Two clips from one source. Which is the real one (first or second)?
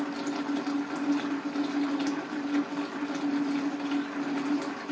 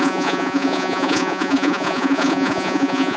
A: first